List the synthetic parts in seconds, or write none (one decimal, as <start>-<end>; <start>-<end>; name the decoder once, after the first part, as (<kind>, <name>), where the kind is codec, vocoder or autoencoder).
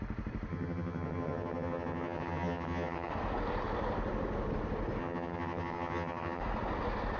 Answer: 0.5-3.1 (vocoder, HiFi-GAN); 5.0-6.4